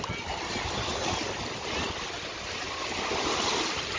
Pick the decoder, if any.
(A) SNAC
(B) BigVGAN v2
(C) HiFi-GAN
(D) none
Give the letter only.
D